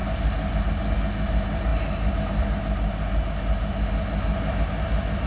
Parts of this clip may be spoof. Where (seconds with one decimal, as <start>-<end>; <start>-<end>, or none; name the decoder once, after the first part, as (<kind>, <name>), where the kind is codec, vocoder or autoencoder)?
none